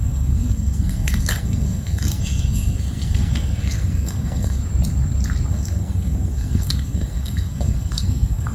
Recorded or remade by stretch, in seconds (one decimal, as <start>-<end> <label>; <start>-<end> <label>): 0.0-4.6 remade; 4.6-5.5 recorded; 5.5-8.5 remade